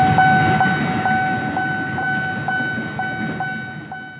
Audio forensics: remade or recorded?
recorded